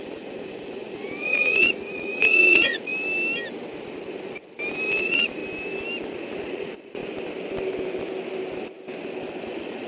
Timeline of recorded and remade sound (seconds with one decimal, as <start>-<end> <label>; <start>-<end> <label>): 0.0-2.9 remade; 2.9-3.8 recorded; 3.8-4.4 remade; 4.4-5.0 recorded; 5.0-5.4 remade; 5.4-6.1 recorded; 6.1-7.0 remade; 7.0-9.4 recorded; 9.4-9.9 remade